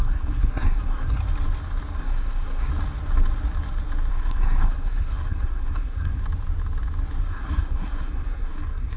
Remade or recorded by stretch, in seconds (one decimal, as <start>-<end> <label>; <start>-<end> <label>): 0.0-1.2 remade; 1.2-2.0 recorded; 2.0-2.7 remade; 2.7-4.1 recorded; 4.1-6.2 remade; 6.2-7.2 recorded; 7.2-9.0 remade